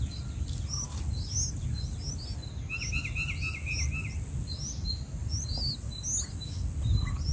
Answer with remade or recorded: recorded